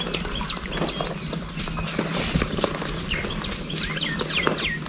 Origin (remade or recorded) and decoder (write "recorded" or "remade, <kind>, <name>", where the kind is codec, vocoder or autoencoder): recorded